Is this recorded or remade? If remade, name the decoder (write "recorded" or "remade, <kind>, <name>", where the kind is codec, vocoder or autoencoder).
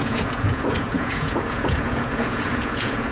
remade, vocoder, Vocos